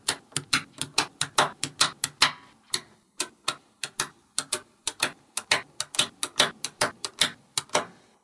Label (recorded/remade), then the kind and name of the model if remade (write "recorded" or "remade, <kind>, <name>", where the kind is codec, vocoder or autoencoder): recorded